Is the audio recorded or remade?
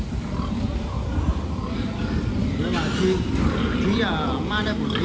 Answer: recorded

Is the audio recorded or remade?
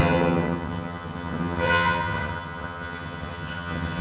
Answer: remade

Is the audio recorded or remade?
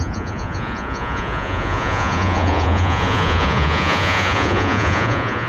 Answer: remade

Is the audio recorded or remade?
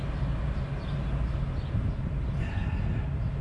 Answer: recorded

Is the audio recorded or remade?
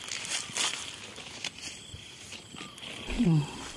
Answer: recorded